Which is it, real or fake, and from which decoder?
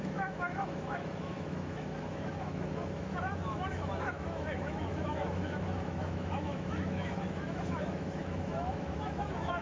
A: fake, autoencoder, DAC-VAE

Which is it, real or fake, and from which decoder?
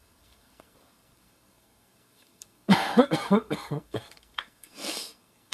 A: fake, codec, SNAC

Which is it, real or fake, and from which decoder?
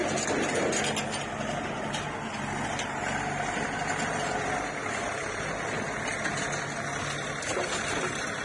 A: real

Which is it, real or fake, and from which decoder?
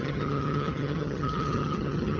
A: fake, vocoder, HiFi-GAN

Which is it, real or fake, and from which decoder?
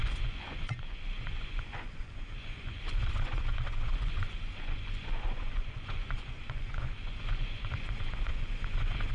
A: fake, vocoder, Vocos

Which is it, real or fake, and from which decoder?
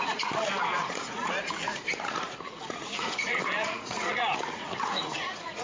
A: fake, vocoder, Vocos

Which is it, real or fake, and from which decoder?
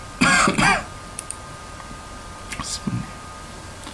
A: fake, vocoder, BigVGAN v2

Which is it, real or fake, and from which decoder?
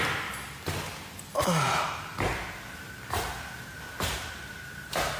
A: real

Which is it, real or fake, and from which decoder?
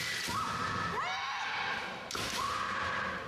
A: real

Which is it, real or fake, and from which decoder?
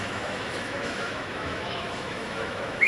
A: fake, autoencoder, DAC-VAE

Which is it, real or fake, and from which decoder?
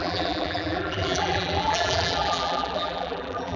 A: fake, vocoder, BigVGAN v2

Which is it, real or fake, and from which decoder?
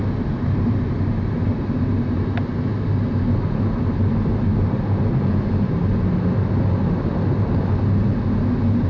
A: real